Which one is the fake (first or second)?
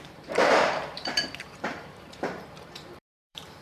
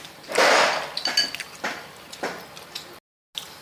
first